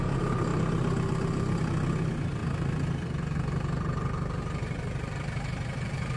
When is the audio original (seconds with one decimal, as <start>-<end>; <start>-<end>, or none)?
0.0-0.5; 1.6-2.4